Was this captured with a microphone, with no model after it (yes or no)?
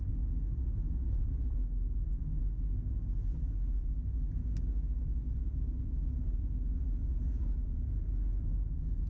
yes